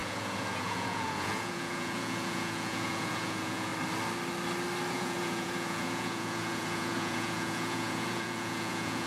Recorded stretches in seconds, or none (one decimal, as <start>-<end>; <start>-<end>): 3.7-4.9